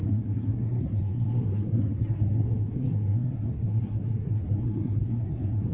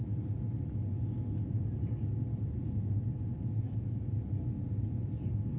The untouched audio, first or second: second